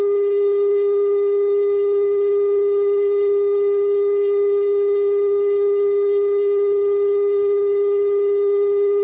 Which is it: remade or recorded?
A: remade